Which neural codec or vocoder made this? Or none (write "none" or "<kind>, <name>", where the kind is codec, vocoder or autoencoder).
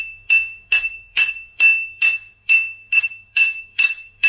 codec, SNAC